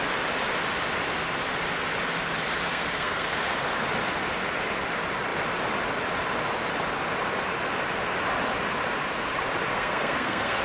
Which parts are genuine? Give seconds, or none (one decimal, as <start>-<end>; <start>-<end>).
0.0-2.7; 3.3-9.7